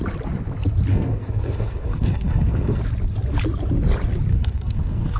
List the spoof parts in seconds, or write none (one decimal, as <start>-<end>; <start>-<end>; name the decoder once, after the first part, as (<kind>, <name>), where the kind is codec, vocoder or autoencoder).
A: 0.9-2.8 (codec, SNAC); 4.3-5.2